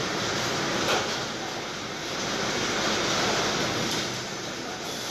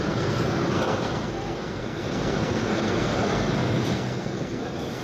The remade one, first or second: second